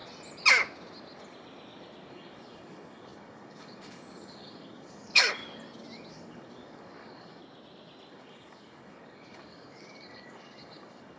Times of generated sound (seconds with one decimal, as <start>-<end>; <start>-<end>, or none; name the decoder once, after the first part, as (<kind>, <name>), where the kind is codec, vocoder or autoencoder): 2.1-5.4 (codec, DAC); 6.1-7.4; 8.1-11.2